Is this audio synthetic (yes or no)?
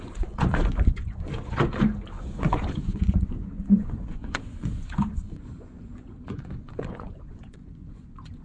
yes